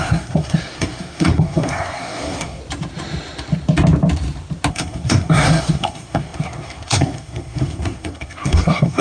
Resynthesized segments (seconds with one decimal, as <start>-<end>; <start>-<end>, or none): 0.0-2.6; 4.7-9.0